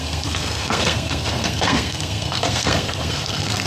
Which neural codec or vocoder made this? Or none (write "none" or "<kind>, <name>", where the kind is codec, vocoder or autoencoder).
codec, SNAC